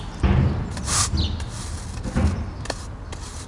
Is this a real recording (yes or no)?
yes